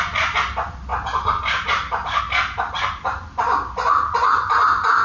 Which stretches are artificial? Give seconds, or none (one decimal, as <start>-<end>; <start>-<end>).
0.9-2.2